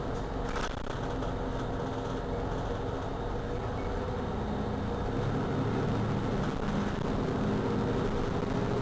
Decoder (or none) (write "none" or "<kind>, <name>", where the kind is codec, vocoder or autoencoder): none